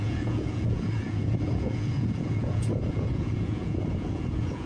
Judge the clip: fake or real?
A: fake